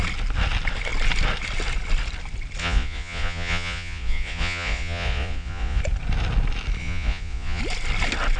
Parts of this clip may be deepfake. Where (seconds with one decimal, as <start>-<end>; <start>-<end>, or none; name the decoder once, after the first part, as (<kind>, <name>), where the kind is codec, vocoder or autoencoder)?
2.6-5.8 (vocoder, Vocos); 6.8-7.6